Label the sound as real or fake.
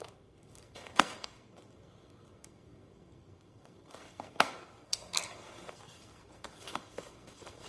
fake